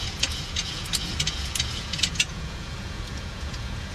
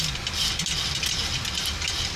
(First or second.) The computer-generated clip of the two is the first